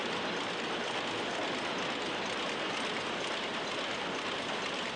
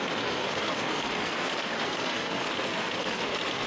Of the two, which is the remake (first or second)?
second